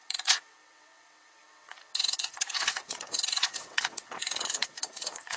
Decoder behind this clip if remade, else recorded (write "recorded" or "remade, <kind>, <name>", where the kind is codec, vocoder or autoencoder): remade, vocoder, WaveNeXt